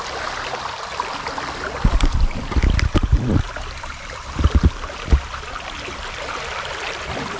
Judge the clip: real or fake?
real